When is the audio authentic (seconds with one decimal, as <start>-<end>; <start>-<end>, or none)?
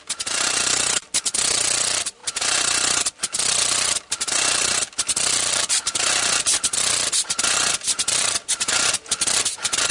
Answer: 0.0-9.9